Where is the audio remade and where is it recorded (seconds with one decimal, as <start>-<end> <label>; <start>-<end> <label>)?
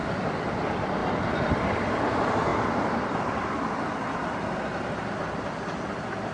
0.0-6.3 recorded